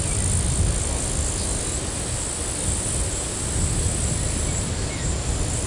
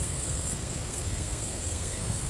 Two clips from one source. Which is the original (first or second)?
first